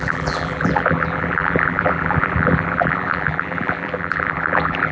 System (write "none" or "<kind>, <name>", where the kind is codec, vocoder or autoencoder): vocoder, BigVGAN v2